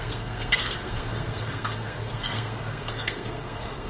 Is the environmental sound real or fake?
fake